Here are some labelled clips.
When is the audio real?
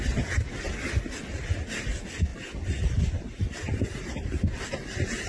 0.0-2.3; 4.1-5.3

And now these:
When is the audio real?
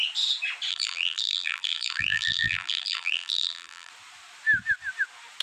0.0-0.7; 3.9-5.4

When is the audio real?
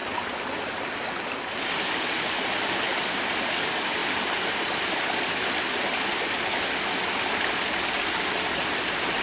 0.0-9.2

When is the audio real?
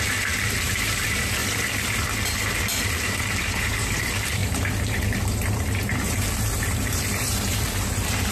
1.4-2.9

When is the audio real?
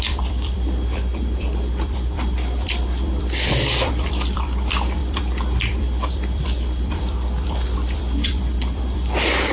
none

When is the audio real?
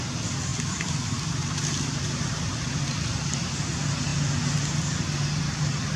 0.0-0.5; 2.5-6.0